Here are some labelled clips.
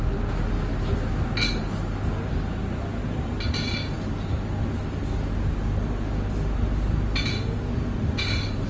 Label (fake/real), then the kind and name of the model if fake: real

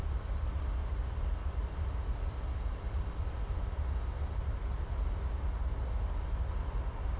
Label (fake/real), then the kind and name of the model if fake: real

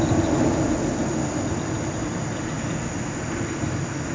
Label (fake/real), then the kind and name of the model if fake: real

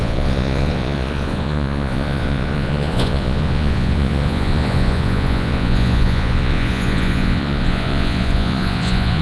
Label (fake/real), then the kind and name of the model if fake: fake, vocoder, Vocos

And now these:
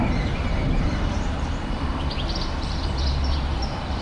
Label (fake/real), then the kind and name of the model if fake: fake, vocoder, BigVGAN v2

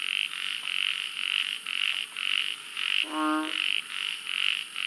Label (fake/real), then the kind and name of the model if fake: real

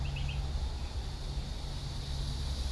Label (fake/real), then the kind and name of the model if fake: real